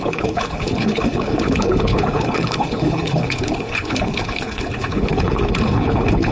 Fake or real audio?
fake